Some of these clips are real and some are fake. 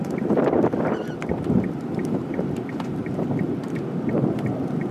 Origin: fake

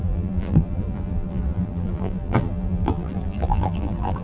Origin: fake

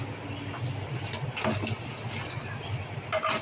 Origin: real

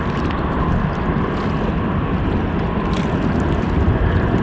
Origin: real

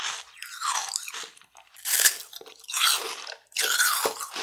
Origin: fake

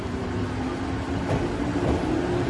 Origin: real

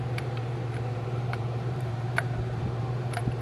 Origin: fake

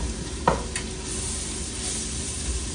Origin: real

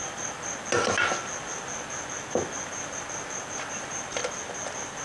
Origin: real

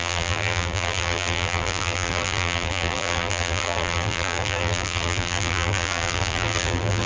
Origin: fake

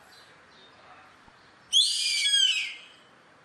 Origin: real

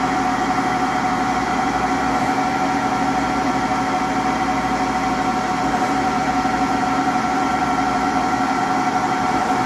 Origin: fake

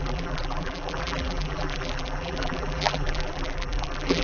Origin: fake